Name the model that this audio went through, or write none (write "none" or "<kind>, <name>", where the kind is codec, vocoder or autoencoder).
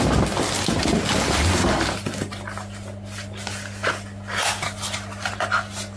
none